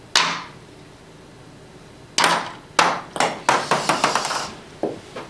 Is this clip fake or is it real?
real